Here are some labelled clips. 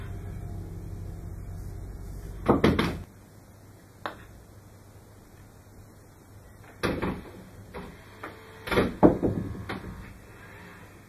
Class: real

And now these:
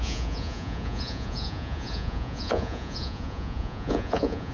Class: fake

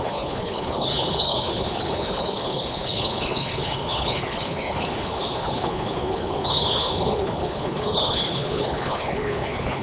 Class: fake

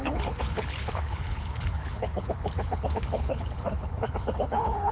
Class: fake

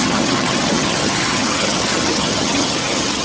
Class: fake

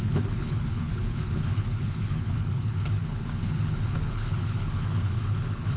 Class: fake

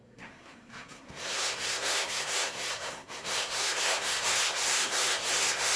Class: fake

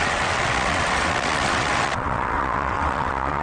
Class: fake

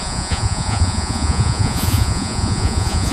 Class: fake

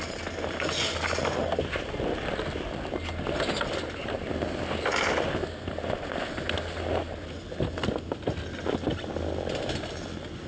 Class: real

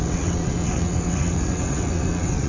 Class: fake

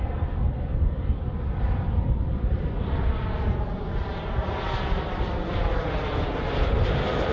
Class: real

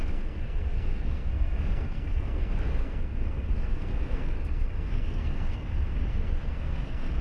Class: fake